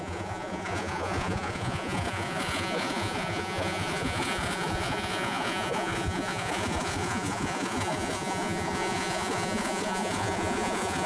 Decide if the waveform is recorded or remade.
remade